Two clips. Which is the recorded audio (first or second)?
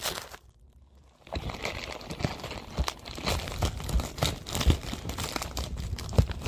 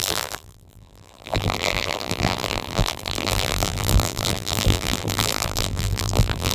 first